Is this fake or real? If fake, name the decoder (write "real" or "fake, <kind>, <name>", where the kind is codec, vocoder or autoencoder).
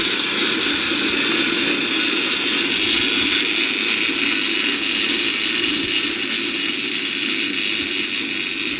real